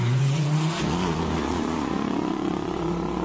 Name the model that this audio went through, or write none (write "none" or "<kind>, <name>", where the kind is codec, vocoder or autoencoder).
vocoder, Vocos